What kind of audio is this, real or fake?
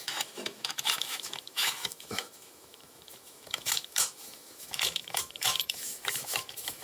fake